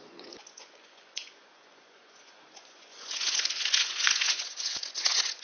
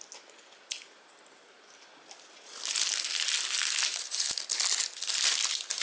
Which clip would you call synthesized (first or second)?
first